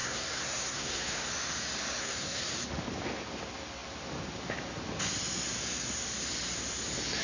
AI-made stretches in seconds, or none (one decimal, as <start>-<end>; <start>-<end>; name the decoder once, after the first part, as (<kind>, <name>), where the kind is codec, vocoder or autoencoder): 0.0-1.3 (codec, SNAC); 2.0-2.5